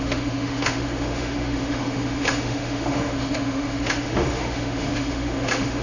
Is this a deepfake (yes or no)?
yes